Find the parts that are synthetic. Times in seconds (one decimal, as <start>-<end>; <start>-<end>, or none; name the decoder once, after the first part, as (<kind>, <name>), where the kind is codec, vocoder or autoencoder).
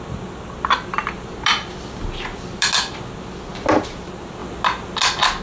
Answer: none